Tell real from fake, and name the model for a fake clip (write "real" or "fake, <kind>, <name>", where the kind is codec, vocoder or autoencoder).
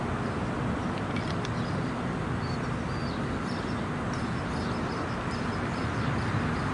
real